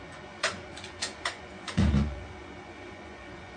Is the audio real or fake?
fake